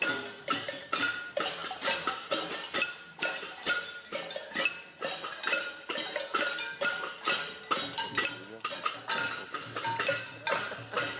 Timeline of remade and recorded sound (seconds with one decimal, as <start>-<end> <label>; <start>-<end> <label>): 0.0-11.2 recorded